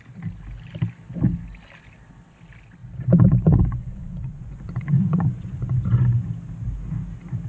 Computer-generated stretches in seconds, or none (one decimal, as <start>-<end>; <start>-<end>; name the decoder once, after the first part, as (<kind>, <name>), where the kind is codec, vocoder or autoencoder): 2.8-6.3 (vocoder, Vocos)